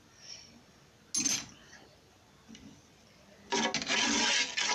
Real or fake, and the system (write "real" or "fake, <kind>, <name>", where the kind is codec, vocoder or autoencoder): real